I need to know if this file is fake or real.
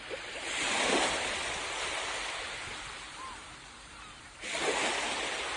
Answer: real